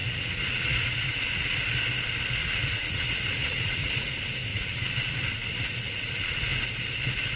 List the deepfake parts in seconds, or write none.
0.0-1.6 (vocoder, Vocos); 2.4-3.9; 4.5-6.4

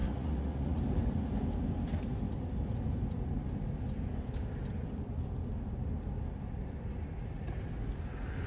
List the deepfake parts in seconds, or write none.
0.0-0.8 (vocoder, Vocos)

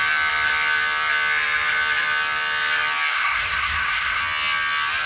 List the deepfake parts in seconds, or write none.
3.1-4.2 (codec, SNAC)